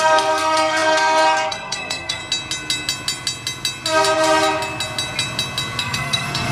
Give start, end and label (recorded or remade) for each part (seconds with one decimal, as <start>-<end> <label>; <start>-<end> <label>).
0.0-2.2 remade; 2.2-5.8 recorded; 5.8-6.5 remade